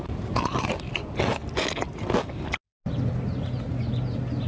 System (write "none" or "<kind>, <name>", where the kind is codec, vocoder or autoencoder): none